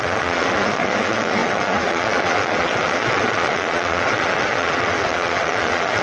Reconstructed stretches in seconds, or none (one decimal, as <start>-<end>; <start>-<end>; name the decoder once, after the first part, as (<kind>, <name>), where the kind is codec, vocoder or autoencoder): 0.0-6.0 (vocoder, Vocos)